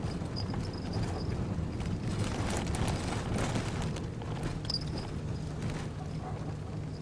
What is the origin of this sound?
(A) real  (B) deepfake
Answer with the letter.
A